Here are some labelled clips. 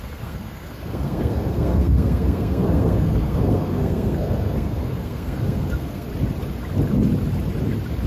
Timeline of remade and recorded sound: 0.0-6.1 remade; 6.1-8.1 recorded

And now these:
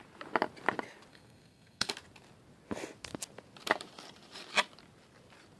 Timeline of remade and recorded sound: 0.0-1.1 recorded; 1.1-1.9 remade; 1.9-5.6 recorded

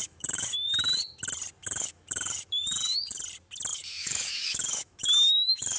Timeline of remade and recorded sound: 0.0-1.0 remade; 1.0-1.6 recorded; 1.6-3.2 remade; 3.2-3.7 recorded; 3.7-5.8 remade

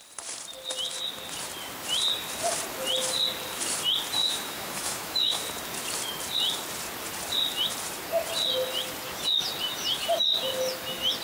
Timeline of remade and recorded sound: 0.0-4.2 recorded; 4.2-5.4 remade; 5.4-11.2 recorded